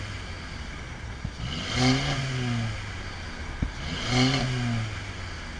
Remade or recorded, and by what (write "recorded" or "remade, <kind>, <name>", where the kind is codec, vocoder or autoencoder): recorded